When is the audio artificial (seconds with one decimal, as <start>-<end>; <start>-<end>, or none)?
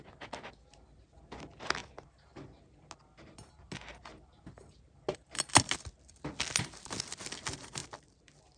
none